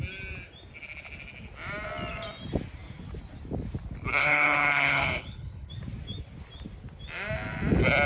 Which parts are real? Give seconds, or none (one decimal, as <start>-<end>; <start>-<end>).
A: 0.0-4.2; 5.7-8.1